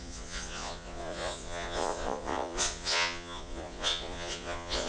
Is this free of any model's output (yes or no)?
no